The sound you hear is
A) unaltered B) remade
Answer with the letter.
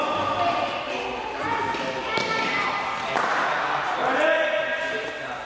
A